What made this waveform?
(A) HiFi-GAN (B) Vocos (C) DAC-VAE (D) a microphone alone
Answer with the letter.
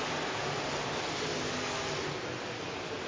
D